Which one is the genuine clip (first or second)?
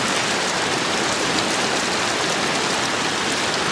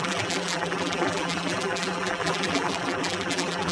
first